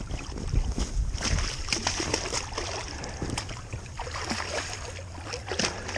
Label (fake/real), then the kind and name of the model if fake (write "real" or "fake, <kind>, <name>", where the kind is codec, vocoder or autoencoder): real